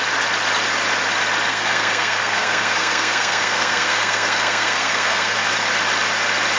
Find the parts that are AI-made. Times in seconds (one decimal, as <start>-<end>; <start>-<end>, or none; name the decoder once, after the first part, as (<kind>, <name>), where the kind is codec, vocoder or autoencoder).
1.5-5.5 (codec, SNAC)